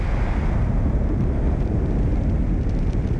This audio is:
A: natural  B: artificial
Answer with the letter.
A